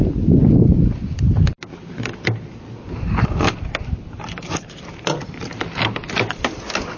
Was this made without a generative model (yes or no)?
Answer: yes